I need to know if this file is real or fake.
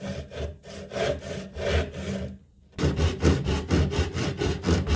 real